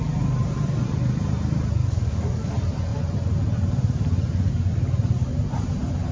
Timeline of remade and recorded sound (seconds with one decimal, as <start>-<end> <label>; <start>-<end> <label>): 0.0-1.8 recorded; 1.8-2.5 remade; 2.5-6.1 recorded